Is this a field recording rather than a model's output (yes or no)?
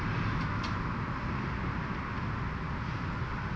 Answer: yes